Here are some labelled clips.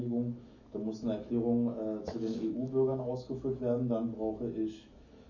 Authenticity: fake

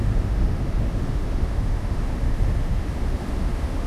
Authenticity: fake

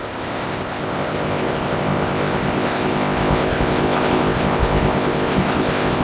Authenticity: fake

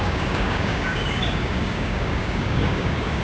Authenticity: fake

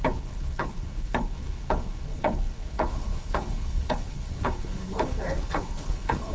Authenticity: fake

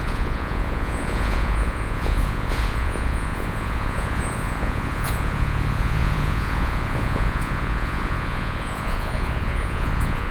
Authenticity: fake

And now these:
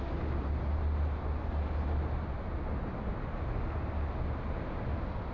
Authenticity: real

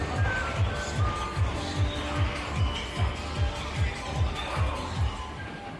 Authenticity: real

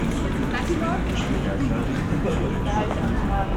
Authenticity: real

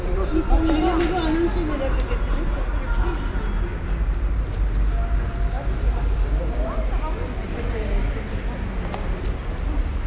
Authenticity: real